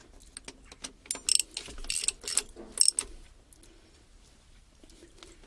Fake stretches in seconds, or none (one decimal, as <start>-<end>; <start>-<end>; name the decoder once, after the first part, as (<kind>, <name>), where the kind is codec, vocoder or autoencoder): none

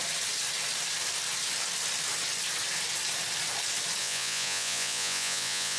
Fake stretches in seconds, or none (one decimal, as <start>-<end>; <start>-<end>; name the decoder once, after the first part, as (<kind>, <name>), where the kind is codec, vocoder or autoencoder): 4.0-5.8 (vocoder, Vocos)

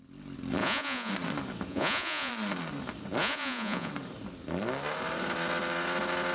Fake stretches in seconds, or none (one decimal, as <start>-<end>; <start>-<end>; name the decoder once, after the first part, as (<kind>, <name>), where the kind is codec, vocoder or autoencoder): 0.6-1.1 (vocoder, Vocos); 1.7-2.3; 3.2-3.9

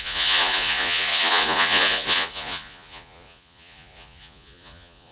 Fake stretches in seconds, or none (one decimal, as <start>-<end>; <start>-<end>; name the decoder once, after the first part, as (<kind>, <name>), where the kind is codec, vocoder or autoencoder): 0.0-5.1 (vocoder, Vocos)